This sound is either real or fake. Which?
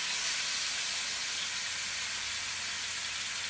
real